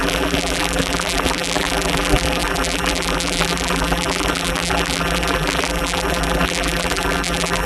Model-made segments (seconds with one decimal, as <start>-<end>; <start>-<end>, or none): 0.0-7.7

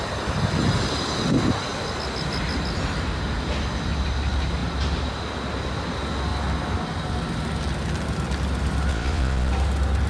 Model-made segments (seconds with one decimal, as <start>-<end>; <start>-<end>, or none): 8.9-9.5

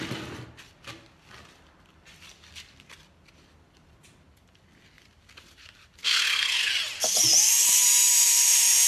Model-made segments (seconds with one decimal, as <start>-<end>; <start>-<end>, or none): 6.0-6.7

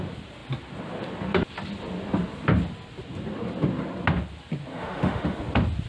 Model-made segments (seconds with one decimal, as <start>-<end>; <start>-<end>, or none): 4.7-5.4